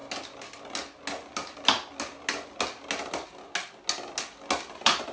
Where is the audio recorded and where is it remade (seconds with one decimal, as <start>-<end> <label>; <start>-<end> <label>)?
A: 0.0-5.1 recorded